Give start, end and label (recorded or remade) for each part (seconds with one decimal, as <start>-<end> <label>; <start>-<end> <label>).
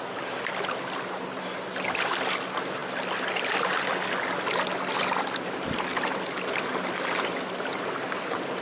0.0-8.6 recorded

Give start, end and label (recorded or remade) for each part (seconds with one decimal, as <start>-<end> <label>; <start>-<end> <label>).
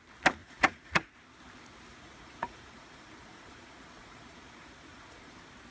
0.0-0.4 recorded; 0.4-1.1 remade; 1.1-1.9 recorded; 1.9-5.3 remade; 5.3-5.7 recorded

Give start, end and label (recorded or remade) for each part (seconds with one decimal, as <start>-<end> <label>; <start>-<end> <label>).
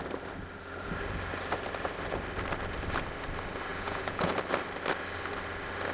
0.0-3.7 recorded; 3.7-4.3 remade; 4.3-5.9 recorded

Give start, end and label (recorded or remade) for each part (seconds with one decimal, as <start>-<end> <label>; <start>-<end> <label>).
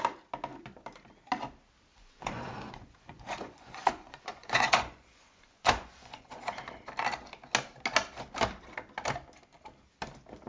0.0-1.9 recorded; 1.9-6.8 remade; 6.8-10.5 recorded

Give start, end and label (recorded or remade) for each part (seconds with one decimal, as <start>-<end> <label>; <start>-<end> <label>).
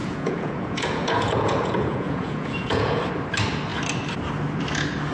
0.0-3.0 remade; 3.0-5.1 recorded